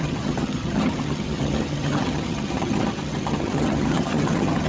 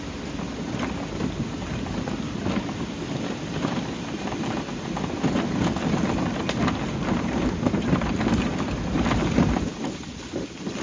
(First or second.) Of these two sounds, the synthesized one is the first